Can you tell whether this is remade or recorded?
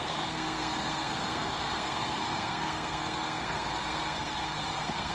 remade